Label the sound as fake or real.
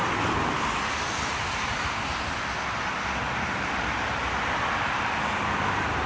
real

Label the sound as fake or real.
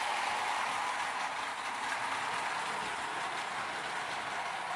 real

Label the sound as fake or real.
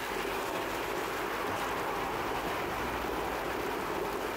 real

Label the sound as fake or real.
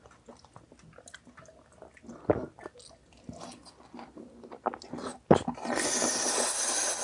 real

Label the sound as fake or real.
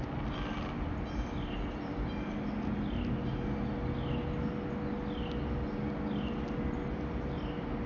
real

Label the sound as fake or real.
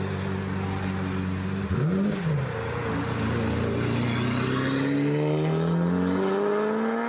real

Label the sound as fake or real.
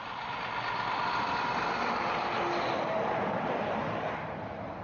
real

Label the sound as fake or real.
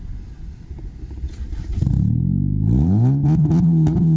real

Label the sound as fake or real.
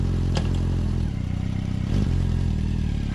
fake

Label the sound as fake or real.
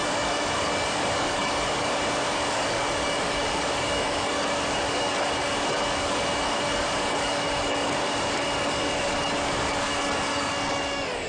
fake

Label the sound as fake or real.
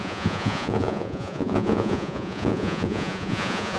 fake